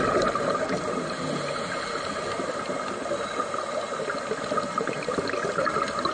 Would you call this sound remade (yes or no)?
no